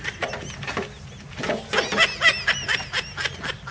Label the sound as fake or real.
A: real